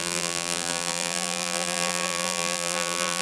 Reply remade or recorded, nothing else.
remade